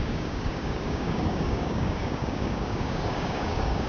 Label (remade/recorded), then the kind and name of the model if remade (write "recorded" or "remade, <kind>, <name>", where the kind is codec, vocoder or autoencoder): remade, codec, DAC